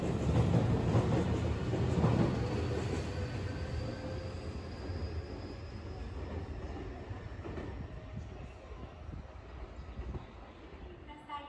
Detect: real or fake real